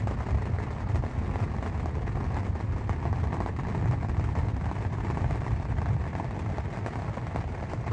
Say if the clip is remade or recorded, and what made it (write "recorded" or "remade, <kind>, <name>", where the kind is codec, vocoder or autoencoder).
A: recorded